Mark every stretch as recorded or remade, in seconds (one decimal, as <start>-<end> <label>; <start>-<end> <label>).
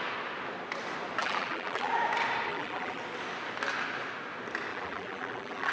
0.0-1.2 recorded; 1.2-1.9 remade; 1.9-2.5 recorded; 2.5-3.0 remade; 3.0-4.7 recorded; 4.7-5.7 remade